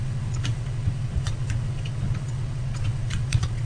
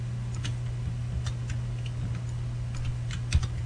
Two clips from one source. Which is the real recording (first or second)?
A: second